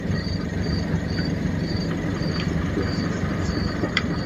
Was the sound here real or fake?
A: fake